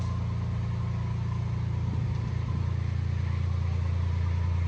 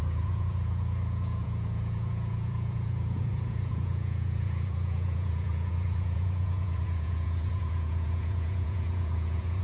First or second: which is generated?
second